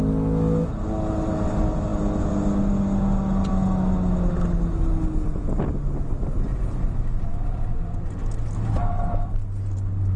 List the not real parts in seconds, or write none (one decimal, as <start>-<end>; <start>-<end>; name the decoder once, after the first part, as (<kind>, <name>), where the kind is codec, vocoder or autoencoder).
none

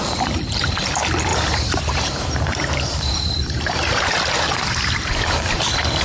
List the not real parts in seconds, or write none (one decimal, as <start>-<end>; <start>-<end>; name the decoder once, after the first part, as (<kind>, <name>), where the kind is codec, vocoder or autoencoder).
1.3-4.9 (vocoder, BigVGAN v2)